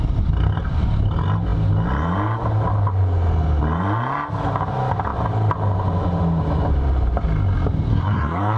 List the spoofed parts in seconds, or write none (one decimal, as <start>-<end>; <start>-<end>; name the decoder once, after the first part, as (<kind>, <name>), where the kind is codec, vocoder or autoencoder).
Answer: 7.9-8.6 (codec, SNAC)